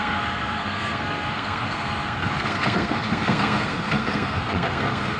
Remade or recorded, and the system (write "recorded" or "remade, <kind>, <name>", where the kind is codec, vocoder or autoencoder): remade, codec, SNAC